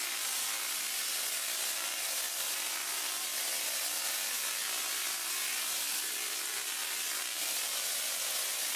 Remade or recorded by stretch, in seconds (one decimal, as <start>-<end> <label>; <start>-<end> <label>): 0.0-8.8 recorded